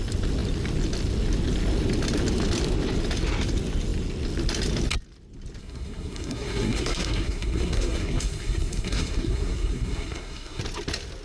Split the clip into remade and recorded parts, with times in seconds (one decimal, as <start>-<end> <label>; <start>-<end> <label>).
0.0-5.6 recorded; 5.6-10.6 remade; 10.6-11.2 recorded